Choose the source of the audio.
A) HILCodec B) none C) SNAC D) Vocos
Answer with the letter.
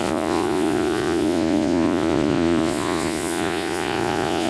D